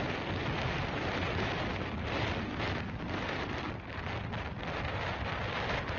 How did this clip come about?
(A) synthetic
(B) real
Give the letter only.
B